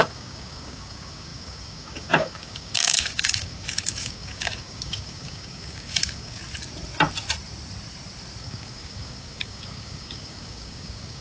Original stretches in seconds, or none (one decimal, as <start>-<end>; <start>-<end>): 6.4-8.4

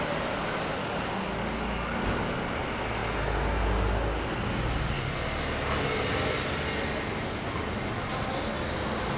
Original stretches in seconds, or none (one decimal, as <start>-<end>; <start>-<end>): 0.0-0.8; 2.5-9.2

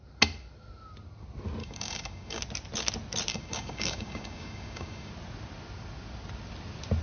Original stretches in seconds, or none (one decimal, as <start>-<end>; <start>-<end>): 0.0-1.6; 2.4-3.3; 5.1-7.0

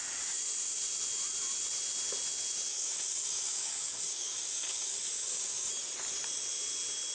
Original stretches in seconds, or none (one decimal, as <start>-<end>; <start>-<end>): 0.0-2.7; 5.7-7.1

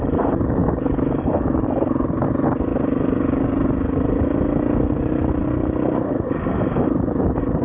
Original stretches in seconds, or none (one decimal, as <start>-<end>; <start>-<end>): 0.0-0.6; 1.3-7.6